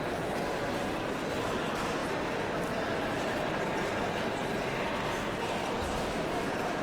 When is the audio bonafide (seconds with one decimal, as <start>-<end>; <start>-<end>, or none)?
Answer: none